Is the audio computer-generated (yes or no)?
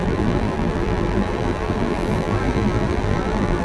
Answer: yes